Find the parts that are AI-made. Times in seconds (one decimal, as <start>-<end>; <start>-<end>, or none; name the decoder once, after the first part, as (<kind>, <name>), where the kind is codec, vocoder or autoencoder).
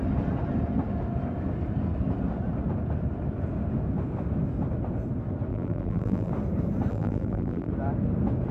5.5-6.3 (vocoder, BigVGAN v2); 6.9-7.7